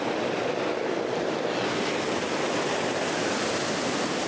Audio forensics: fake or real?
real